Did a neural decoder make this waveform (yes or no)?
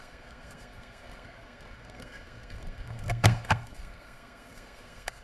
yes